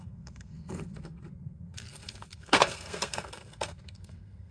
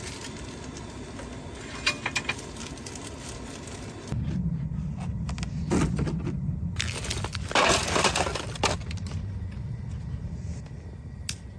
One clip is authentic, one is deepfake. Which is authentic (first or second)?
second